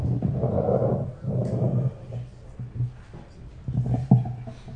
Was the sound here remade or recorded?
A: recorded